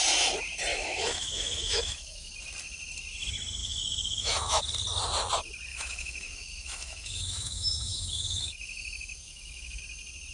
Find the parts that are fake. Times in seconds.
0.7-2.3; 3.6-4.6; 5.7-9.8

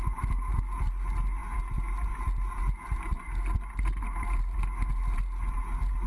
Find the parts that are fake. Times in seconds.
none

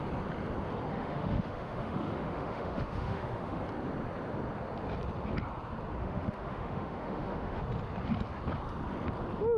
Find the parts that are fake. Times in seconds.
0.9-3.6; 6.0-7.6

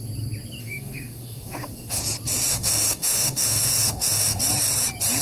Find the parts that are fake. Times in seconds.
0.6-2.0; 2.5-4.4